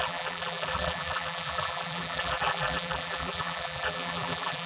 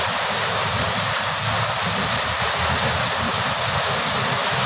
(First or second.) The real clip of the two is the second